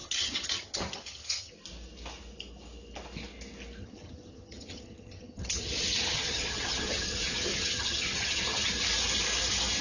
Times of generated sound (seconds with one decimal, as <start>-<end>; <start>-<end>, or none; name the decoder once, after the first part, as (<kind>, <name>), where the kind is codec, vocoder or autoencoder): 0.0-1.5 (vocoder, HiFi-GAN); 3.8-8.7